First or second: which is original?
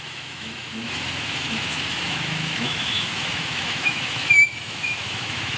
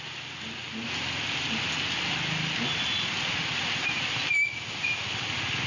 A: second